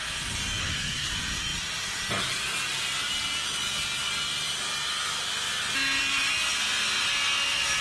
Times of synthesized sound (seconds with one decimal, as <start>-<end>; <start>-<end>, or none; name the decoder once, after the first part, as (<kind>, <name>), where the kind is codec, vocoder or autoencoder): 0.6-1.1 (codec, SNAC)